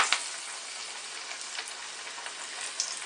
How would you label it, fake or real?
real